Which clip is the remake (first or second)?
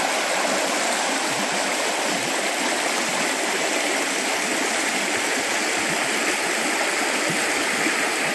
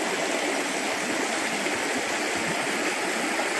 first